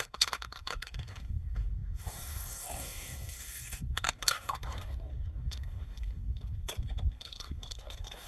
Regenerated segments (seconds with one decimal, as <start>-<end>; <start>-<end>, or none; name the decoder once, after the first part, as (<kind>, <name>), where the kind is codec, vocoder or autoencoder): 0.0-8.3 (codec, SNAC)